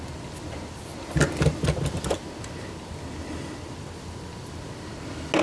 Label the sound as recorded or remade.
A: recorded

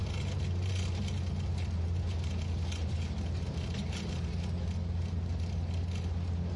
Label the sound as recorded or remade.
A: recorded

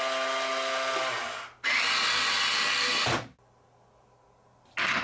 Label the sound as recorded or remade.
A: recorded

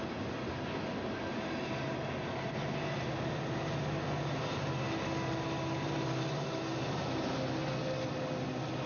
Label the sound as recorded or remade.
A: recorded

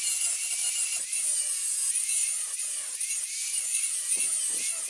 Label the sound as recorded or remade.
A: remade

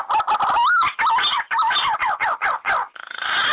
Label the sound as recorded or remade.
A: recorded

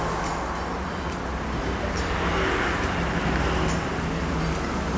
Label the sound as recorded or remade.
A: recorded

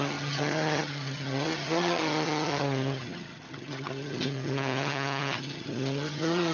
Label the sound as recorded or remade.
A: remade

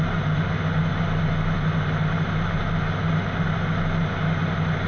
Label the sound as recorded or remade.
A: recorded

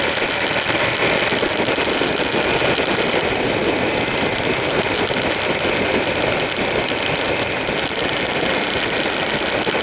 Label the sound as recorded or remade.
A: recorded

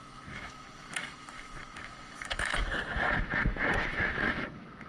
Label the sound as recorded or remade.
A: remade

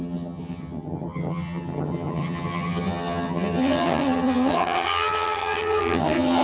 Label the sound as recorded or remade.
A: remade